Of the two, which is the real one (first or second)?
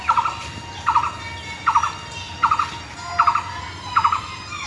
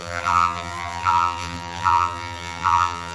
first